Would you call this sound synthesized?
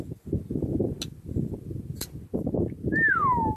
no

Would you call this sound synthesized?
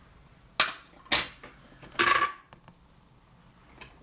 no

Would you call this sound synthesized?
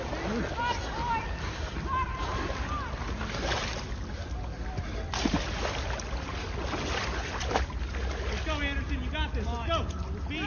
no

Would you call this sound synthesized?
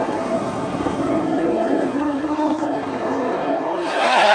yes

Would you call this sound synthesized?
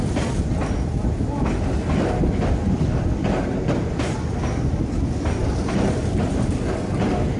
no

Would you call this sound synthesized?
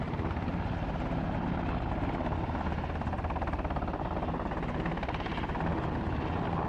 no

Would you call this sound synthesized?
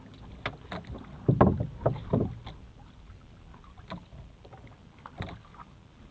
no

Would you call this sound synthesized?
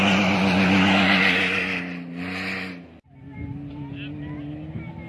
no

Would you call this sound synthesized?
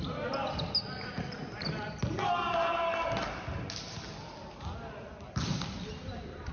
no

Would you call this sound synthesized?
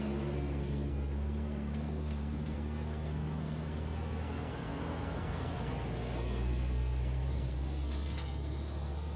yes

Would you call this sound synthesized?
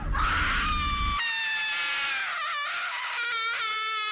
no